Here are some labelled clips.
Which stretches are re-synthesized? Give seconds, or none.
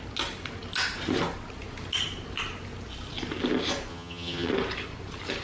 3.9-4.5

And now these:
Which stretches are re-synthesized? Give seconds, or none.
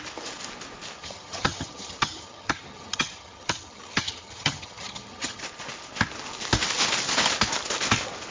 1.0-5.4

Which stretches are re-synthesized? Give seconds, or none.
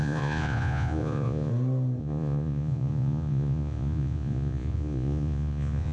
0.0-1.5; 2.0-5.9